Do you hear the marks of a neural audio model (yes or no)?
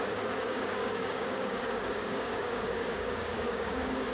yes